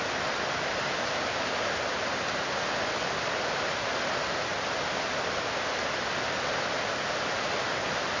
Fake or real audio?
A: real